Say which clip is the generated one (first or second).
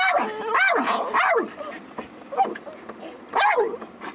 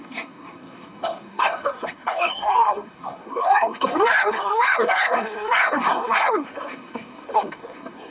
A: second